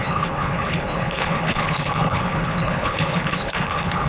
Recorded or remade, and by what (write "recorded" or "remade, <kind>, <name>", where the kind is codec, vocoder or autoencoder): remade, codec, HILCodec